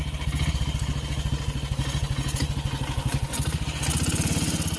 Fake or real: real